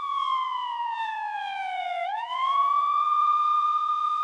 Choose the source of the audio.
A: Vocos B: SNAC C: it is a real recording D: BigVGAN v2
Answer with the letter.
A